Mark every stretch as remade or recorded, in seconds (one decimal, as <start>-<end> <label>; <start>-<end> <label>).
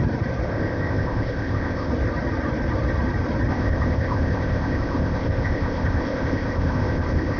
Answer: 0.0-0.5 recorded; 0.5-1.9 remade; 1.9-3.5 recorded; 3.5-7.4 remade